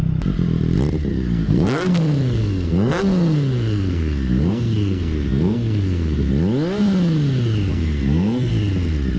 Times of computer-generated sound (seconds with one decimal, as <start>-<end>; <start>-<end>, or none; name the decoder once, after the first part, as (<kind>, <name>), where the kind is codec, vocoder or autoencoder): 1.1-6.3 (codec, SNAC); 7.7-8.5